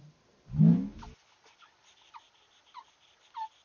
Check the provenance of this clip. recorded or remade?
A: recorded